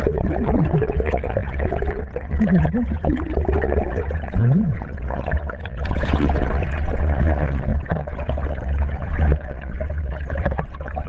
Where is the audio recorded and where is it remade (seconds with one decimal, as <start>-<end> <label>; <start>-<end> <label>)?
0.0-11.1 remade